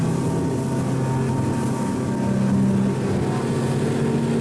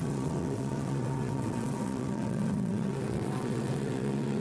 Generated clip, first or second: second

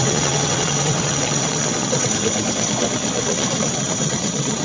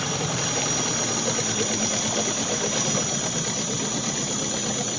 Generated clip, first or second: first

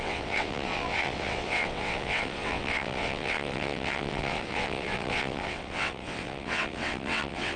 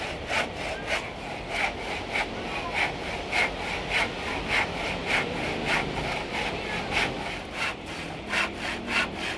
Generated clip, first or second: first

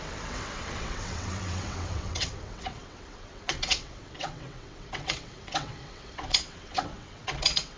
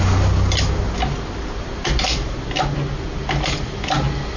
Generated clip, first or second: first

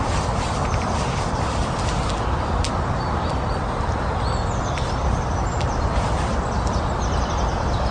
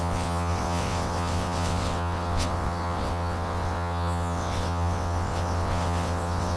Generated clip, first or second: second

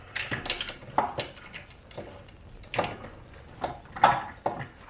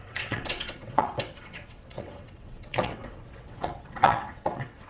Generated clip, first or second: second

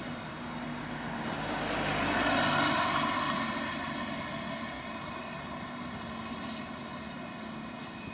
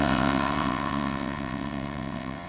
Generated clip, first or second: second